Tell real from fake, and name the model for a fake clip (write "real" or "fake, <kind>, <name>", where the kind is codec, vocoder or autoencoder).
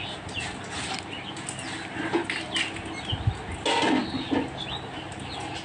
real